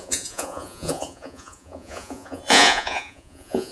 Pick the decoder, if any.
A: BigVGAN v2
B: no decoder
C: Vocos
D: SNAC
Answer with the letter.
C